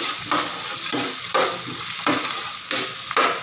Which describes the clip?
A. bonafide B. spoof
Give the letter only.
A